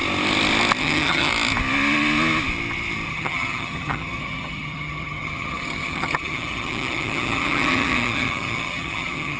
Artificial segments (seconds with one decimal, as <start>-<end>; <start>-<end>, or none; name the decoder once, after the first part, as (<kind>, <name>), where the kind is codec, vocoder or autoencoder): 0.8-1.3 (vocoder, HiFi-GAN); 3.1-9.4